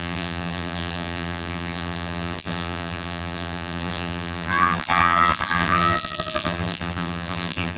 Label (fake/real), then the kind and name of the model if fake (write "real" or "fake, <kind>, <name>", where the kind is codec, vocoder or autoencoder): fake, vocoder, BigVGAN v2